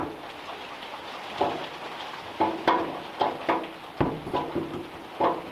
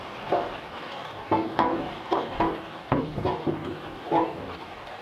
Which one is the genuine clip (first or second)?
first